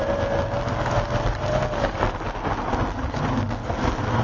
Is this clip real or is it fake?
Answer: real